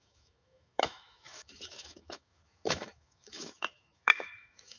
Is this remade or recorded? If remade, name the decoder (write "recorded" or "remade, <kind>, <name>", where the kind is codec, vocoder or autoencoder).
remade, autoencoder, DAC-VAE